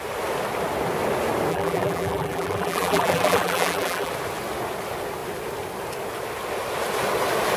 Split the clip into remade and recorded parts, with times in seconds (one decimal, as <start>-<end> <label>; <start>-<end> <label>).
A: 0.0-1.5 recorded; 1.5-4.1 remade; 4.1-7.6 recorded